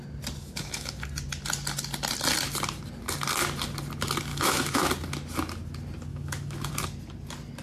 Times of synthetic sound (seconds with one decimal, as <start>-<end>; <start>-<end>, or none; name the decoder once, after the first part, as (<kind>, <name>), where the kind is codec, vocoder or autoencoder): 0.4-1.0 (autoencoder, DAC-VAE); 4.3-4.9; 6.1-6.7